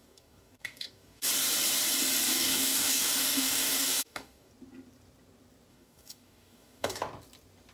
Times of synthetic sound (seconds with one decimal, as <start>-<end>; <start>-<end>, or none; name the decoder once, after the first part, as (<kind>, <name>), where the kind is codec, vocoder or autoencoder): 0.0-1.3 (codec, DAC); 2.3-4.5; 5.7-7.0

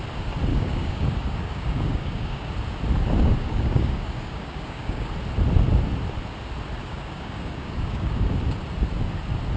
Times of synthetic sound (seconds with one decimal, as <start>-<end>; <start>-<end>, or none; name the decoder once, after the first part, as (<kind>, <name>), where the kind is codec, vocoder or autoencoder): 0.5-2.5 (codec, DAC); 3.2-5.1; 6.8-8.3

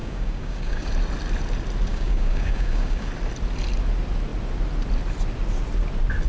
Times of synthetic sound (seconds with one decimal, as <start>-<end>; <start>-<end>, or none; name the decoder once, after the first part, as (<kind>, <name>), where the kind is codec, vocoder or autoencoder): 0.0-0.9 (codec, DAC); 1.9-3.1

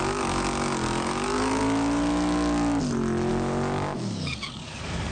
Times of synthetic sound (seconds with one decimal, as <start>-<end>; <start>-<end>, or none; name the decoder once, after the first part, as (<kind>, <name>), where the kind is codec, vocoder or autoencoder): 0.0-1.6 (codec, DAC); 3.3-5.1

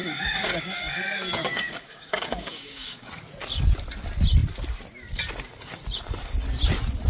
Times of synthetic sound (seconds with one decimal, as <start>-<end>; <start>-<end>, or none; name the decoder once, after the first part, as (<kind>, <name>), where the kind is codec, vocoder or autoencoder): 0.0-3.1 (codec, DAC)

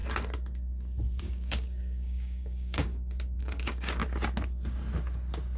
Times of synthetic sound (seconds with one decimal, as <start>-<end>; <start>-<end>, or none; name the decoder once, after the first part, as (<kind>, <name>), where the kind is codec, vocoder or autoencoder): 1.2-2.9 (codec, DAC); 3.4-4.0